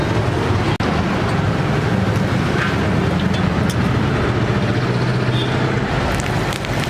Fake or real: real